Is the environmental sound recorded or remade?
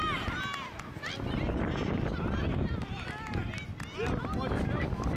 recorded